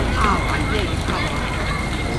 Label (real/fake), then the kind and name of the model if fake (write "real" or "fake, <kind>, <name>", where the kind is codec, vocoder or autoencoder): real